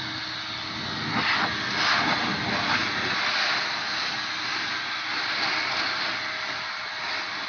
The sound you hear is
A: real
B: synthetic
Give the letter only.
A